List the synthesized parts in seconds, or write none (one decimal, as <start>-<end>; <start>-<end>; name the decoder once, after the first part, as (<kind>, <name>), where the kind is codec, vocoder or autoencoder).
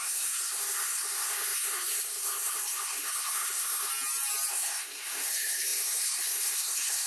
0.0-3.9 (codec, SNAC); 4.5-7.1